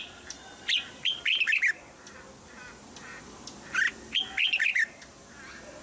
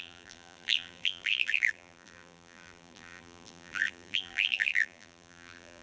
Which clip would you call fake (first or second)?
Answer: second